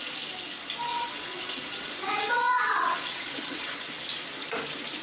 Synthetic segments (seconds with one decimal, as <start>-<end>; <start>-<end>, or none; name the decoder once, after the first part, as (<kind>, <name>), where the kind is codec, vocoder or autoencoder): 0.9-3.9 (vocoder, WaveNeXt)